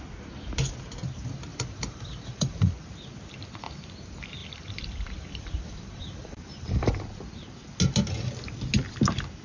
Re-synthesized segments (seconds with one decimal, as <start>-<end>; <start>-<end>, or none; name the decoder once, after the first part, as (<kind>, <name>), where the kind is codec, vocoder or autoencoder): 1.5-2.7 (vocoder, BigVGAN v2); 4.4-6.9